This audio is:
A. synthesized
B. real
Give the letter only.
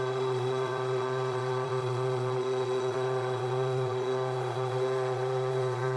A